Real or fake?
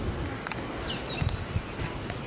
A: real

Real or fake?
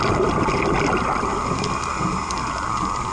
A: real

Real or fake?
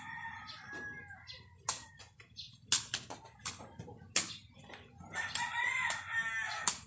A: real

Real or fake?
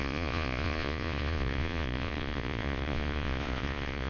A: fake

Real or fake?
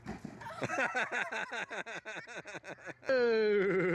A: real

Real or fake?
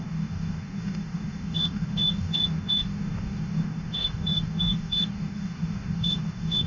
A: fake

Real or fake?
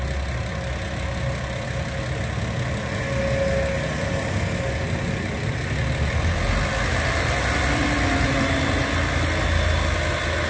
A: real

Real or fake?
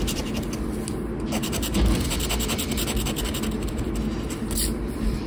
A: real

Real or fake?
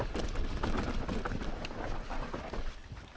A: real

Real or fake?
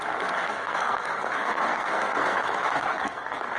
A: fake